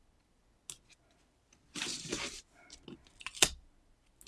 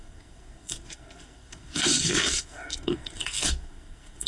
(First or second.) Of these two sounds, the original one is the first